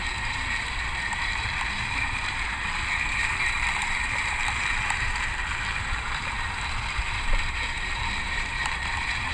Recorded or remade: remade